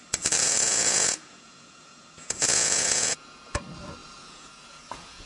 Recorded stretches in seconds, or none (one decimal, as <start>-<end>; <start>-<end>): 0.0-0.4; 3.6-4.0